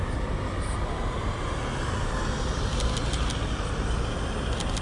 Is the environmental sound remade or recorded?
recorded